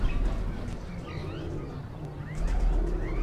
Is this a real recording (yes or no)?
yes